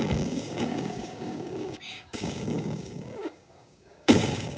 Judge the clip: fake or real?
fake